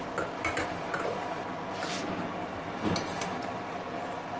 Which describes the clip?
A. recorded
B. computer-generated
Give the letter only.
A